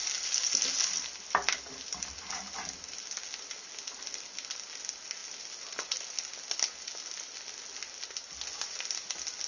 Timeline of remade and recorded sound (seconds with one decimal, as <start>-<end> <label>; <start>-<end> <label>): 0.0-9.5 recorded